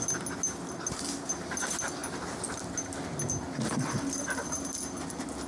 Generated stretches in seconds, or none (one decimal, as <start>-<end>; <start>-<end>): none